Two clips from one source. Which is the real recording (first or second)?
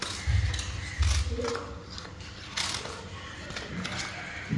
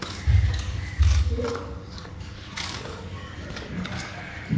first